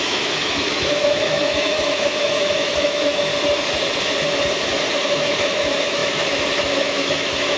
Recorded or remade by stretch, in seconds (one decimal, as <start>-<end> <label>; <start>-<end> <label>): 0.0-3.3 remade; 3.3-4.9 recorded; 4.9-7.6 remade